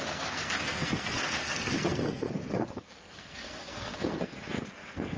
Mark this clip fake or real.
fake